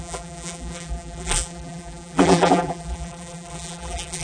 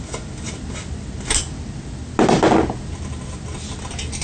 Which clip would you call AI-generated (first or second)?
first